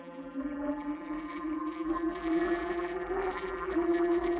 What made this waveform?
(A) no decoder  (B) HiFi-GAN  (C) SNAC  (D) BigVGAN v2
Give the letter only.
D